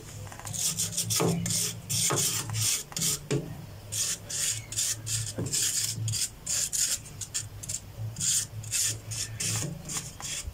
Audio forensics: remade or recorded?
recorded